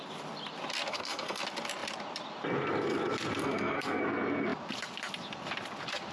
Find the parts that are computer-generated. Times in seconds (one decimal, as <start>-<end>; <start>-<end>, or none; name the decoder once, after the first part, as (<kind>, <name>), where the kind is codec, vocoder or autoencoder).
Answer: 0.9-1.4 (codec, SNAC); 3.4-4.0